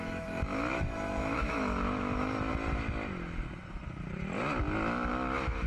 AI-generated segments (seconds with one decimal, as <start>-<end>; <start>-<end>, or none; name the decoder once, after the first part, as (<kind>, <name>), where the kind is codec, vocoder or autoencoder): 0.0-2.5 (autoencoder, DAC-VAE); 5.1-5.7